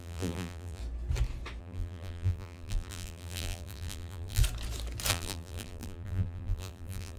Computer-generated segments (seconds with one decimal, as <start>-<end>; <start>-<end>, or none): 0.0-0.8; 1.6-4.4; 5.1-7.2

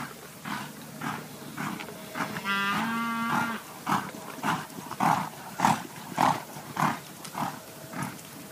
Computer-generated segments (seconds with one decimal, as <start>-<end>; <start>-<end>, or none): 0.0-1.8; 4.0-8.5

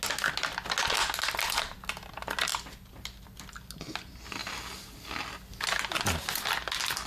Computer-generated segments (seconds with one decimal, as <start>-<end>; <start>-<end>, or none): 2.5-3.2

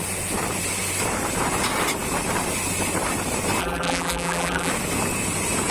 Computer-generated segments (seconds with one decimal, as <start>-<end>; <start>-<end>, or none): 3.6-4.7

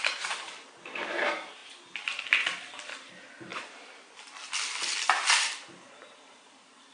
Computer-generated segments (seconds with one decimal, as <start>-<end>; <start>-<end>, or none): 0.0-1.6; 3.1-3.5; 4.8-6.9

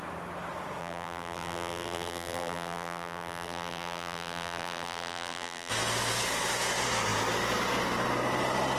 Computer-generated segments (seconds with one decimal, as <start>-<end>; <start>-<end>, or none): 0.8-5.7

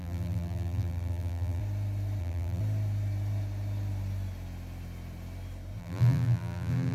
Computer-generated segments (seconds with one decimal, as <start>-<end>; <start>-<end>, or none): 0.0-1.6; 2.2-2.6; 5.8-6.9